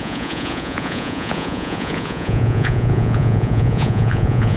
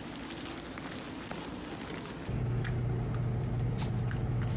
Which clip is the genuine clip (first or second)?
second